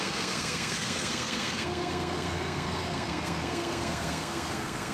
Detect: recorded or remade remade